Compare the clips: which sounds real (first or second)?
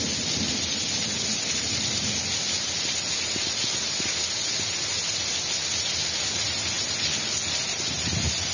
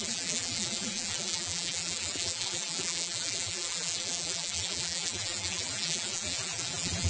first